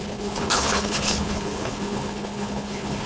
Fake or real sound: fake